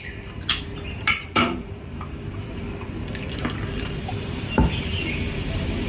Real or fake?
fake